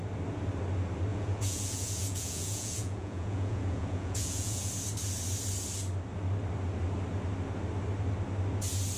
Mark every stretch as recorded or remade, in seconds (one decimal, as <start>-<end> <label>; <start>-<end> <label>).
0.0-1.1 recorded; 1.1-4.7 remade; 4.7-9.0 recorded